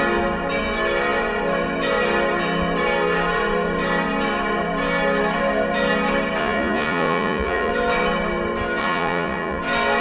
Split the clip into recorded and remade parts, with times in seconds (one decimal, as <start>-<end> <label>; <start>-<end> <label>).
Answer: 0.0-6.4 recorded; 6.4-7.7 remade; 7.7-8.8 recorded; 8.8-9.6 remade; 9.6-10.0 recorded

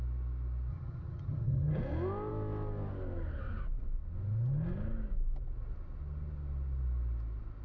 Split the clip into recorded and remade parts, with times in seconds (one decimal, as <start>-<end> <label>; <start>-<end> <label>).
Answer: 0.0-0.7 recorded; 0.7-1.8 remade; 1.8-7.6 recorded